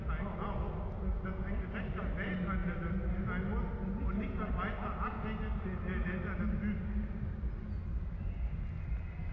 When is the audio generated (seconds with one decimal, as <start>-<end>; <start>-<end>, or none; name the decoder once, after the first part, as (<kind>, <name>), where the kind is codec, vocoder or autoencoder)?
none